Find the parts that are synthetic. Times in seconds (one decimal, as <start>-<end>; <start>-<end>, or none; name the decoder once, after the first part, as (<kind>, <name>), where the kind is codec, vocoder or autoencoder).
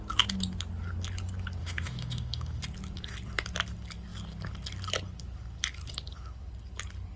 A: 1.6-2.6 (autoencoder, DAC-VAE)